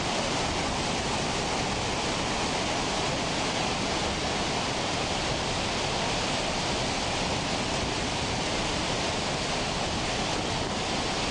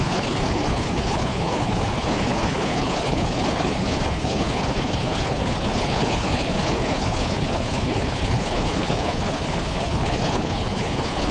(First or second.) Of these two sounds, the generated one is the second